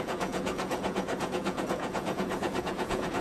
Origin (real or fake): fake